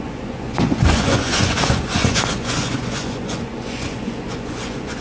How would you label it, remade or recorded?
remade